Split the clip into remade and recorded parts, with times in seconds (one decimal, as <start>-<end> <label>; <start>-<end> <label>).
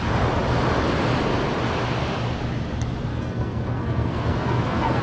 0.0-3.1 recorded; 3.1-5.0 remade